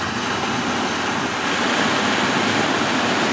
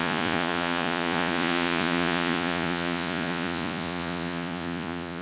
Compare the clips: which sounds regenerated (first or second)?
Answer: second